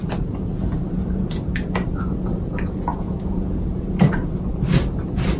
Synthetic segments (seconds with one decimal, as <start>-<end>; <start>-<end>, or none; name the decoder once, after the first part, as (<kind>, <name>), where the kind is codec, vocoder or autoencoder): 2.9-3.9 (vocoder, Vocos)